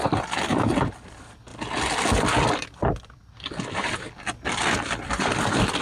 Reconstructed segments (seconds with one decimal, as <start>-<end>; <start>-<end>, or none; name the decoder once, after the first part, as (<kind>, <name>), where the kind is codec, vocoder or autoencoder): 1.5-4.1 (vocoder, BigVGAN v2)